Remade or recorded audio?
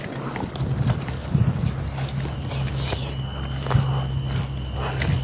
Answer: recorded